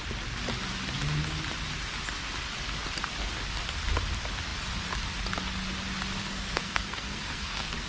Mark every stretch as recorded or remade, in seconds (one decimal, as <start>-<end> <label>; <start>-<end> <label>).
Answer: 0.0-6.2 recorded; 6.2-7.9 remade